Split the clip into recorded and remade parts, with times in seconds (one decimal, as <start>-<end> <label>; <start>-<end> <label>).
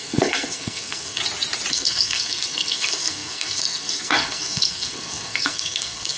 0.0-1.2 remade; 1.2-1.7 recorded; 1.7-6.2 remade